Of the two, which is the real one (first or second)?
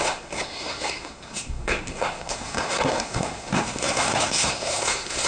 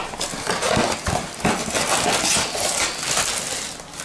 second